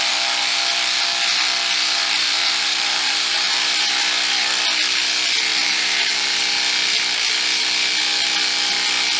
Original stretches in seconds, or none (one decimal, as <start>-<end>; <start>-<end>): 0.0-2.0; 3.9-5.5; 6.4-9.2